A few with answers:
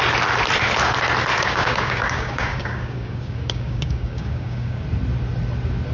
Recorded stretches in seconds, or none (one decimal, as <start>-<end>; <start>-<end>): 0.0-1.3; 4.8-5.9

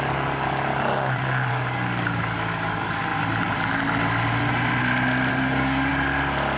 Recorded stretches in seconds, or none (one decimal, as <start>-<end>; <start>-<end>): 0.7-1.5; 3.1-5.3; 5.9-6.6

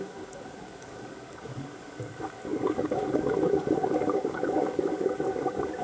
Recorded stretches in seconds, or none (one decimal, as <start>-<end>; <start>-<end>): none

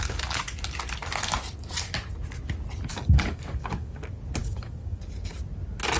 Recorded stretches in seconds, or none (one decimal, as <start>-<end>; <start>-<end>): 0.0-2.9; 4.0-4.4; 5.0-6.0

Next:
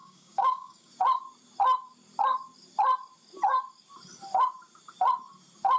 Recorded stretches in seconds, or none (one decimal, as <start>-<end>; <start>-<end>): 0.9-5.8

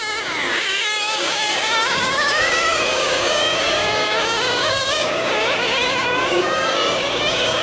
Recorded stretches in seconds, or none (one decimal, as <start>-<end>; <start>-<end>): none

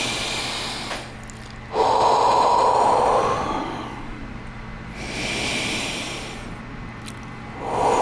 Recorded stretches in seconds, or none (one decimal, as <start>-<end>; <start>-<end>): 0.0-3.6; 4.2-8.0